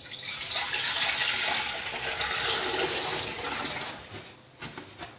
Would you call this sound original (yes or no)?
yes